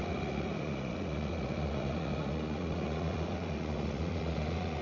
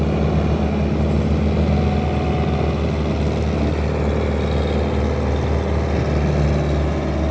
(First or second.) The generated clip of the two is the first